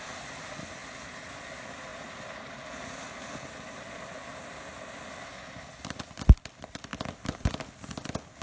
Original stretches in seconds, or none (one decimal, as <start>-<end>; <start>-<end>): 0.0-8.4